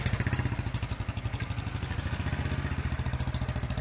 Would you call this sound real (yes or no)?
yes